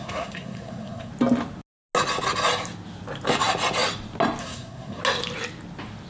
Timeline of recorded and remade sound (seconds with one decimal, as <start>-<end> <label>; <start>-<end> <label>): 0.0-1.1 remade; 1.1-4.4 recorded; 4.4-5.0 remade; 5.0-6.1 recorded